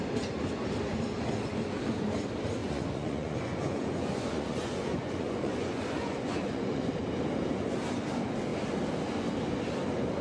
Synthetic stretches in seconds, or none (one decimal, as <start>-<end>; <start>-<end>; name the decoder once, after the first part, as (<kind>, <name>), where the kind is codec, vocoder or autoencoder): 2.6-6.9 (vocoder, Vocos)